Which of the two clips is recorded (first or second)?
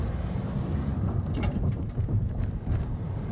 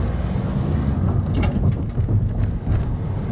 second